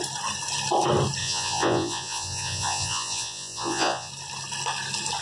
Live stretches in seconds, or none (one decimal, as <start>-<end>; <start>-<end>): 0.0-1.2; 4.1-5.2